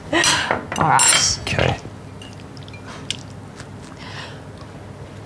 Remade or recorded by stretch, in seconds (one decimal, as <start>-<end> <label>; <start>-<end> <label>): 0.0-5.3 recorded